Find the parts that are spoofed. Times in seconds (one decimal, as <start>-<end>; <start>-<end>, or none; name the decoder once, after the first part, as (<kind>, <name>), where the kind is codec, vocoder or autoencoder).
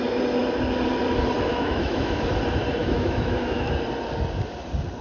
1.5-2.3 (autoencoder, DAC-VAE); 2.8-3.7